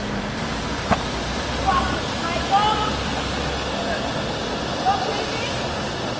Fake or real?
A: real